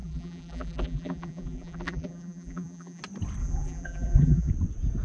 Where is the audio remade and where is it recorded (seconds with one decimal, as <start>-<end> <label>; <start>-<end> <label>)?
0.0-3.0 remade; 3.0-3.4 recorded; 3.4-4.5 remade; 4.5-5.0 recorded